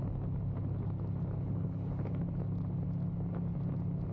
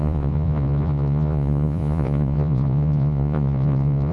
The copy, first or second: second